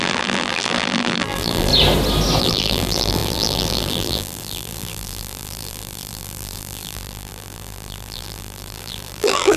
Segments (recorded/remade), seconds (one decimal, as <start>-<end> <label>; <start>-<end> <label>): 0.0-1.7 remade; 1.7-2.4 recorded; 2.4-9.6 remade